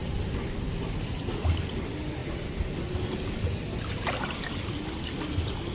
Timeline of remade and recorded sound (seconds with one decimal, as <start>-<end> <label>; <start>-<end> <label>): 0.0-5.7 recorded